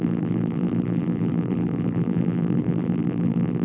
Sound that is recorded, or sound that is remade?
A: remade